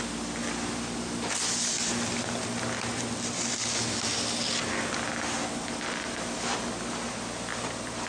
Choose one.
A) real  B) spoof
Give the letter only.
A